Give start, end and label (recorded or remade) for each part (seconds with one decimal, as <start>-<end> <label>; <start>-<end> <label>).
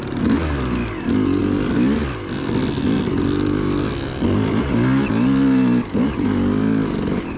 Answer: 0.0-7.4 recorded